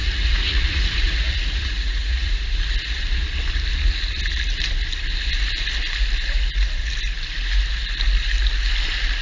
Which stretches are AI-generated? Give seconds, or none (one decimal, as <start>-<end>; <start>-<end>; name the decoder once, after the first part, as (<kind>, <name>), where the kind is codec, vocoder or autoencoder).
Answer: 0.0-2.4 (vocoder, Vocos)